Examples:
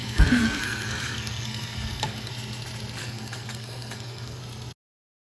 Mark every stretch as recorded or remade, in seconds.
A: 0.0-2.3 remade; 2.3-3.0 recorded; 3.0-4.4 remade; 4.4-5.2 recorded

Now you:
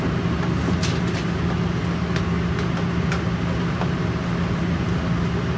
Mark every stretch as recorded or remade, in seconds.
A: 0.0-5.6 recorded

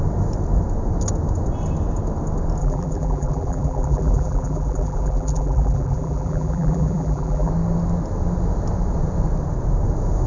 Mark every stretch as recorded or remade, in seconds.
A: 0.0-2.6 recorded; 2.6-7.5 remade; 7.5-10.3 recorded

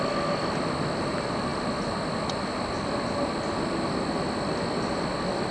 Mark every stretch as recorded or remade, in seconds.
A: 0.0-5.5 recorded

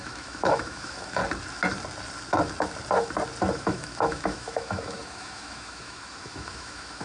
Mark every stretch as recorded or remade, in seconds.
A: 0.0-1.2 remade; 1.2-3.5 recorded; 3.5-7.0 remade